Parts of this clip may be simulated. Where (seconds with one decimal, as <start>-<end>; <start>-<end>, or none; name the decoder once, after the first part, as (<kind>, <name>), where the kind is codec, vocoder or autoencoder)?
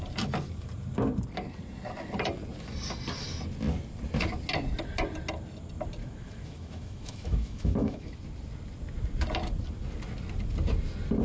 6.0-8.2 (autoencoder, DAC-VAE)